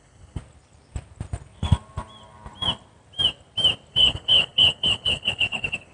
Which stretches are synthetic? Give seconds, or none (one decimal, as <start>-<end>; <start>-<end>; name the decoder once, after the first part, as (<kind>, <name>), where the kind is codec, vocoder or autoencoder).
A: 0.0-0.4 (codec, HILCodec); 3.9-5.9

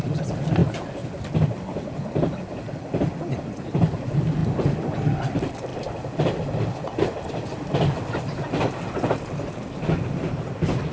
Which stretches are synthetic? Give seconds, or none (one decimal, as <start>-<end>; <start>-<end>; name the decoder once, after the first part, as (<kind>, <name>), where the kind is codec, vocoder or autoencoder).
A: none

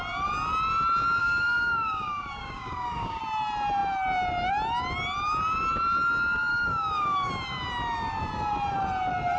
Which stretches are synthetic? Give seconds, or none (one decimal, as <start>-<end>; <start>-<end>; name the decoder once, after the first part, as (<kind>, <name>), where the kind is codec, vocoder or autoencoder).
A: 1.2-3.2 (codec, DAC); 6.5-7.3

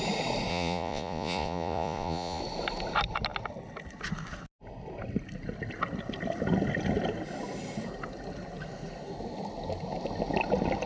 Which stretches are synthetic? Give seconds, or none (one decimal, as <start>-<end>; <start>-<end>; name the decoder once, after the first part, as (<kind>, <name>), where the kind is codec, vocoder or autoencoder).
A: 0.5-2.4 (vocoder, Vocos)